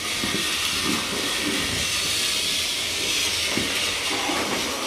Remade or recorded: recorded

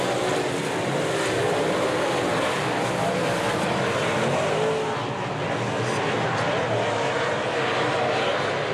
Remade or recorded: recorded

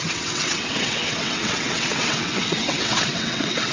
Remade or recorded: remade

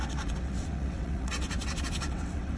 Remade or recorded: remade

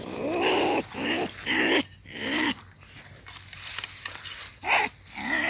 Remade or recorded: recorded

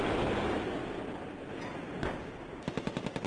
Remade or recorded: recorded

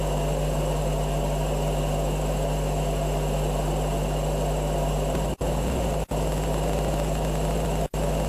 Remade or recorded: recorded